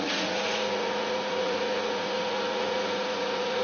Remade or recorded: remade